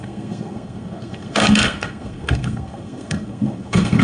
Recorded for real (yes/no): no